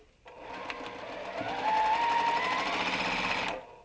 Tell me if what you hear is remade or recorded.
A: recorded